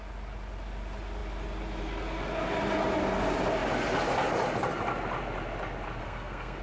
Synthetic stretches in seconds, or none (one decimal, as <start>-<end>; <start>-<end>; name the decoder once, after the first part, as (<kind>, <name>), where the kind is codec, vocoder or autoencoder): 6.0-6.6 (codec, SNAC)